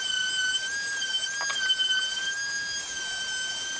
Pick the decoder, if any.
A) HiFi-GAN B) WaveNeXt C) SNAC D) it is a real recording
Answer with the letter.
D